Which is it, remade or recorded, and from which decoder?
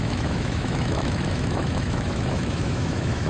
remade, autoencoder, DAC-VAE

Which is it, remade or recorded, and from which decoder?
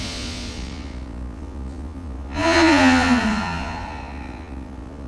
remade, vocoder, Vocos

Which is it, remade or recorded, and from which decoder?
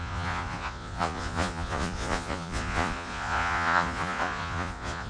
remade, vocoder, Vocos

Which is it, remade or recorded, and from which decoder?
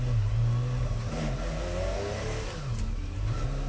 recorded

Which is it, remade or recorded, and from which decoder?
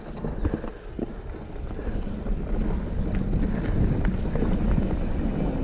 recorded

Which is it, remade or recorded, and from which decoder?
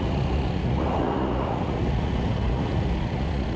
remade, vocoder, Vocos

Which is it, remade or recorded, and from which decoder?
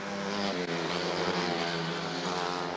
recorded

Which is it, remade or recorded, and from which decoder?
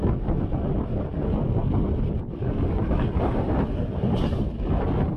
recorded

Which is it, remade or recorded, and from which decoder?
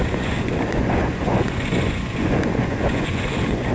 remade, vocoder, Vocos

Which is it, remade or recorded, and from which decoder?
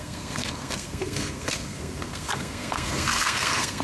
remade, codec, SNAC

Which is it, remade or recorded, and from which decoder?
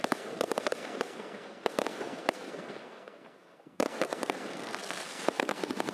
remade, codec, SNAC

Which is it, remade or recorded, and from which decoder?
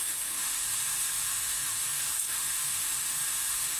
remade, autoencoder, DAC-VAE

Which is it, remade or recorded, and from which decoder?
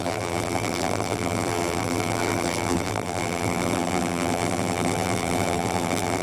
remade, vocoder, BigVGAN v2